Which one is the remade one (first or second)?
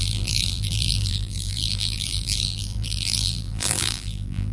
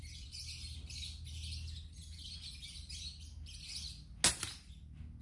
first